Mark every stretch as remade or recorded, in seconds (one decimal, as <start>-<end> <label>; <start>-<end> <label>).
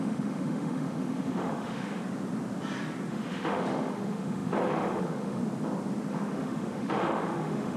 0.0-2.0 remade; 2.0-3.1 recorded; 3.1-5.4 remade; 5.4-6.1 recorded; 6.1-7.8 remade